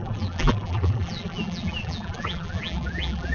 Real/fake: fake